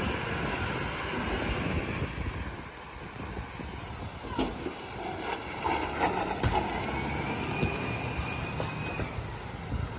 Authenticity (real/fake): real